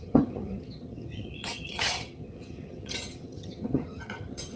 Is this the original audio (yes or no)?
no